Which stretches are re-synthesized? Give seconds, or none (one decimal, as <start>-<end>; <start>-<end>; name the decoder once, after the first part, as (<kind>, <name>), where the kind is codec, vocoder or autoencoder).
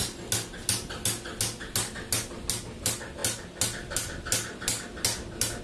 none